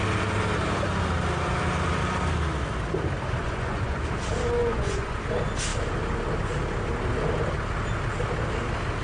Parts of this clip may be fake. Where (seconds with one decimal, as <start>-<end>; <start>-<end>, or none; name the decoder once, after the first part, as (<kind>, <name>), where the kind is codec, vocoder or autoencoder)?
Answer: 3.4-4.0 (vocoder, Vocos); 4.6-5.2